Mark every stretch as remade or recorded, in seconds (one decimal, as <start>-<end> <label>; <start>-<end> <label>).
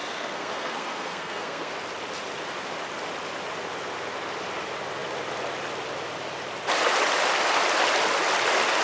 0.0-1.7 remade; 1.7-8.8 recorded